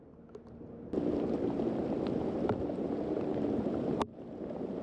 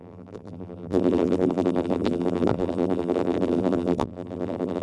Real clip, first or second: first